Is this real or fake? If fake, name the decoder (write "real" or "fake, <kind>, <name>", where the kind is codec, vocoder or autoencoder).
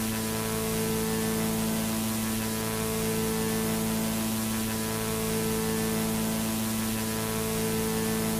real